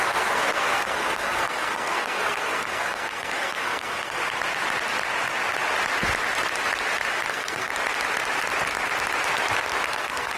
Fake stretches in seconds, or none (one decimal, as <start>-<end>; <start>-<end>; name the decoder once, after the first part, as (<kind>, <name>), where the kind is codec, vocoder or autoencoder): 0.0-4.2 (codec, SNAC); 7.3-7.7; 9.9-10.4